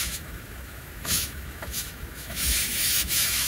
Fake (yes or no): yes